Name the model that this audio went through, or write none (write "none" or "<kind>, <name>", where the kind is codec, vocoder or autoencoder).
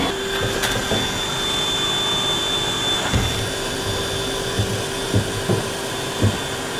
none